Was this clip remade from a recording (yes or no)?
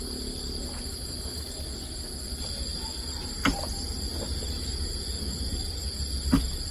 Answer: no